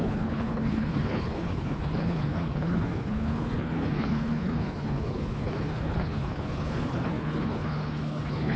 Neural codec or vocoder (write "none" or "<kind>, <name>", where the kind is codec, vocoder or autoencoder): codec, HILCodec